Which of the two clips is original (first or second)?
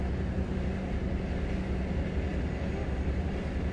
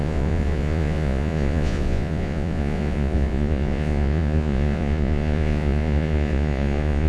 first